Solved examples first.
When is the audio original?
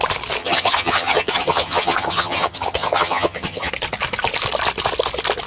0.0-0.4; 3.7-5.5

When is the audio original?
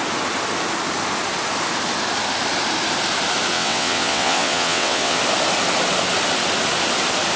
0.0-3.5; 5.2-7.4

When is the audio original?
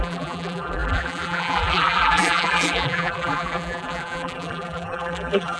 none